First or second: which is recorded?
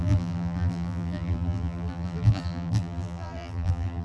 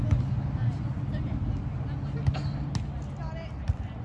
second